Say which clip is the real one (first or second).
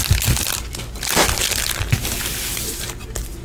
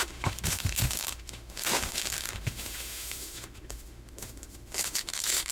first